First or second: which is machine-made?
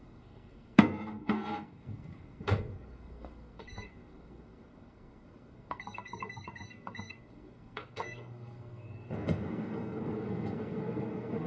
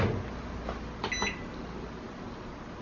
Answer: first